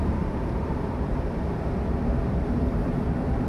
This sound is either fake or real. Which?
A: fake